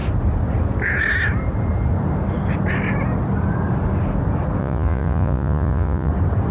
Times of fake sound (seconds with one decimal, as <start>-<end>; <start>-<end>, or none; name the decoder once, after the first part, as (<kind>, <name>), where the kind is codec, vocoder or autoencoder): 4.6-6.1 (vocoder, Vocos)